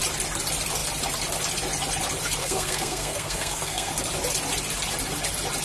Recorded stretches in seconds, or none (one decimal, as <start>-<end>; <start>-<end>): 0.0-2.4; 3.9-5.6